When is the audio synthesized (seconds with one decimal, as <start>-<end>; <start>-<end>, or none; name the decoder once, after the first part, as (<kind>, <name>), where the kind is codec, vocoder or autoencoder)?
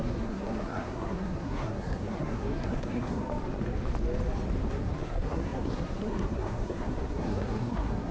0.0-3.2 (codec, SNAC); 4.7-8.1